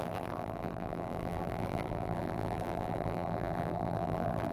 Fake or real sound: fake